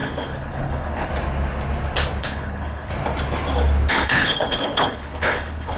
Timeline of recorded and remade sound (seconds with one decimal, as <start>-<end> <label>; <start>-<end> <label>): 0.0-1.1 remade; 1.1-2.2 recorded; 2.2-2.9 remade; 2.9-3.9 recorded; 3.9-5.8 remade